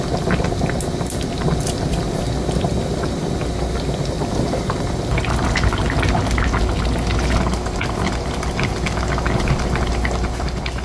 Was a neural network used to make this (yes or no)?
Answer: no